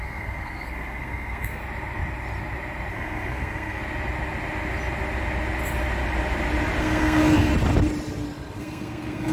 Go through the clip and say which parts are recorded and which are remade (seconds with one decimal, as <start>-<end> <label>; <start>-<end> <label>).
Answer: 0.0-1.6 remade; 1.6-2.9 recorded; 2.9-3.8 remade; 3.8-6.8 recorded; 6.8-7.5 remade; 7.5-8.6 recorded; 8.6-9.3 remade